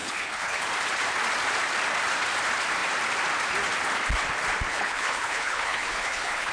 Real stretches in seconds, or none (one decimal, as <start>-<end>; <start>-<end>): 0.6-4.7